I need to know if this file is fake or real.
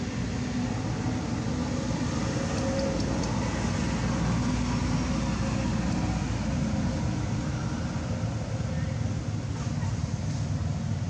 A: real